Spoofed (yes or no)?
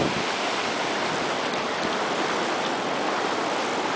no